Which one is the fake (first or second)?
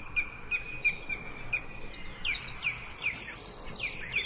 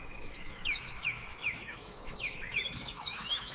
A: second